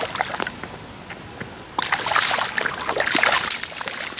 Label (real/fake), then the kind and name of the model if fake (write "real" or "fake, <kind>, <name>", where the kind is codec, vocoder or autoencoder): real